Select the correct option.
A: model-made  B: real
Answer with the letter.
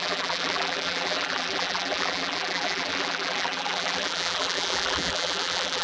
A